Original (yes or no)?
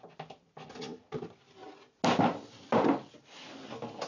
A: yes